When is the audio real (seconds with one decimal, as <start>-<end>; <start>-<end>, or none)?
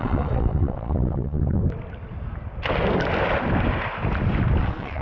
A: 1.6-4.6